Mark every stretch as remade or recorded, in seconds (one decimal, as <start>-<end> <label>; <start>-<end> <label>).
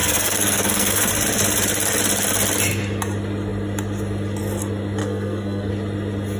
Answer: 0.0-1.1 remade; 1.1-5.0 recorded; 5.0-5.7 remade; 5.7-6.4 recorded